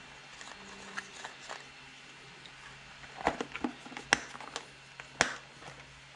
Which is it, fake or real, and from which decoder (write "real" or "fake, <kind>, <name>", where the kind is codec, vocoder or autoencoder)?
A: real